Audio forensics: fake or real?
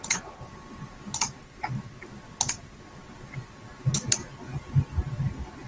real